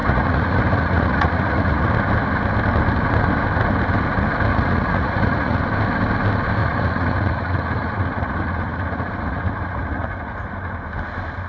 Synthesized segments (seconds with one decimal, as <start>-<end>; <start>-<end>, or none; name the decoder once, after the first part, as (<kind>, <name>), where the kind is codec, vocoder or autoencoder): 0.0-1.9 (vocoder, Vocos); 4.5-5.6; 6.6-10.5